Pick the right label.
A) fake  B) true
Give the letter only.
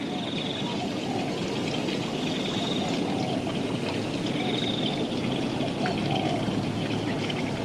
B